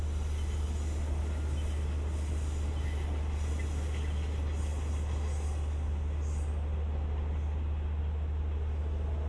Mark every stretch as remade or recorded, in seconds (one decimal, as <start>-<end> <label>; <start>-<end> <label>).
0.0-9.3 recorded